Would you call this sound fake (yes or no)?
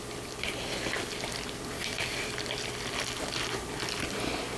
no